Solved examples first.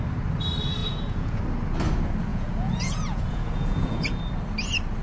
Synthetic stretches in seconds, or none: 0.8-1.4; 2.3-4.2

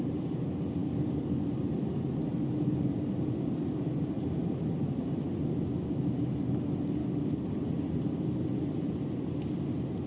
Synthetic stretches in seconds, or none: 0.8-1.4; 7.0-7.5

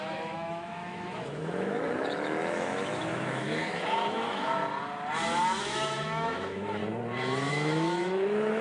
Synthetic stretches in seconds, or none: 0.0-4.6; 5.6-6.8; 7.5-8.6

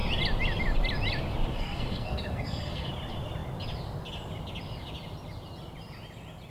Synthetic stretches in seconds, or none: 1.5-2.9

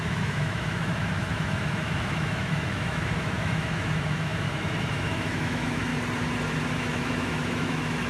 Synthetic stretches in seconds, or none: 0.0-5.9; 6.7-8.1

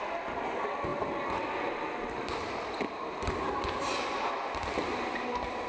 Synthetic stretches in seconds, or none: none

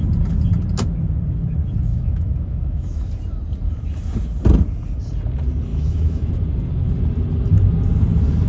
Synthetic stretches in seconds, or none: 1.9-3.1; 5.7-6.3